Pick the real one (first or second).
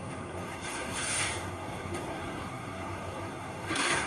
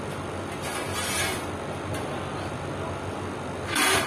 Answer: second